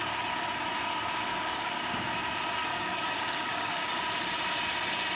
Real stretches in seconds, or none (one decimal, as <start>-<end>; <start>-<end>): 0.0-1.3; 2.1-2.7; 4.0-5.2